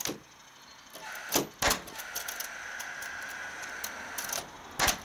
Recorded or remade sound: recorded